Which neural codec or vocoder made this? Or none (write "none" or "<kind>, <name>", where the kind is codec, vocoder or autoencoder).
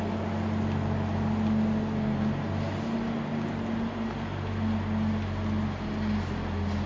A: none